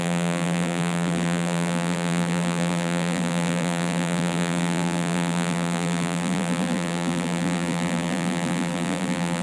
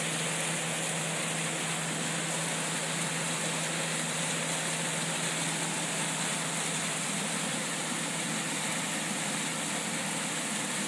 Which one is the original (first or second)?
second